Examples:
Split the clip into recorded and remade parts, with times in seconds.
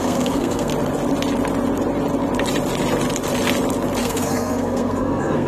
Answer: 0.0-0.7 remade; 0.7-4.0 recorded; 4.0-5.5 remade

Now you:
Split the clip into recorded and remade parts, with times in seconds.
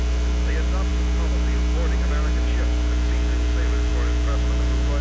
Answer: 0.0-5.0 recorded